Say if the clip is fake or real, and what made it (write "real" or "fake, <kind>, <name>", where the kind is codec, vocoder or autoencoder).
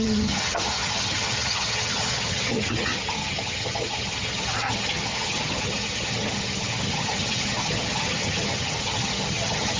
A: fake, vocoder, HiFi-GAN